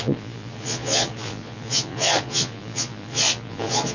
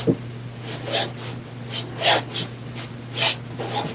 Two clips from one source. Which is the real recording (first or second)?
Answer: second